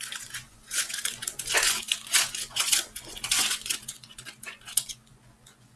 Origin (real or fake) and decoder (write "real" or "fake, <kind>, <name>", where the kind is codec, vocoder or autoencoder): fake, vocoder, Vocos